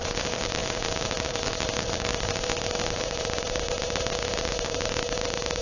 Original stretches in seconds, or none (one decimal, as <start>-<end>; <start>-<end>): none